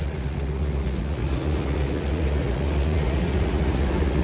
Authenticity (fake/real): fake